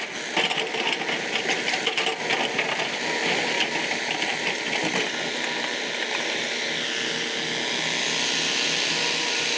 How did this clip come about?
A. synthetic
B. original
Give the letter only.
B